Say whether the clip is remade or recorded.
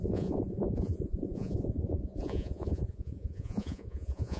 remade